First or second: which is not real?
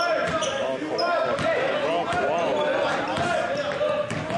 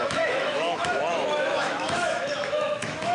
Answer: second